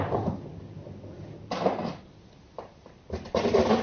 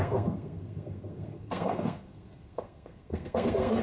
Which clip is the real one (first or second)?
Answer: first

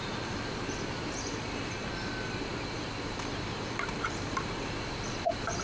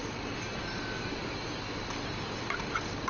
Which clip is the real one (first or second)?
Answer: second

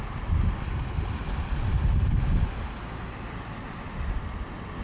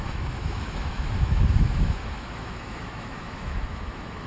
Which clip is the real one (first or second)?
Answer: first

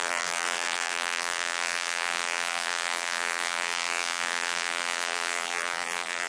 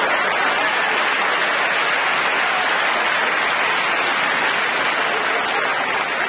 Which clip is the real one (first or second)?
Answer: second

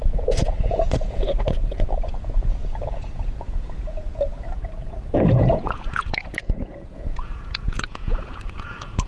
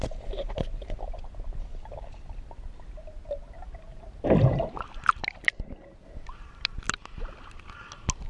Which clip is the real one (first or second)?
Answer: second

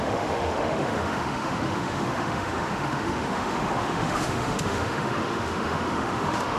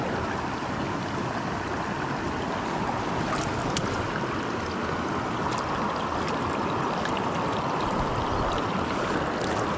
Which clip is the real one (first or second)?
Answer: second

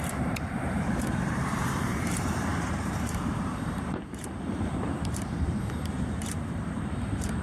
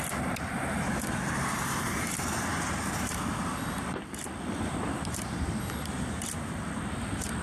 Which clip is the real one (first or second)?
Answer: second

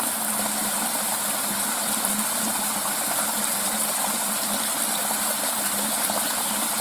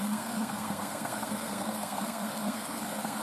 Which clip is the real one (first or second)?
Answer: first